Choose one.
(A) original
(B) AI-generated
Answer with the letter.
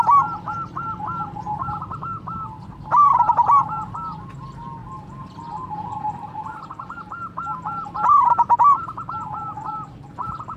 A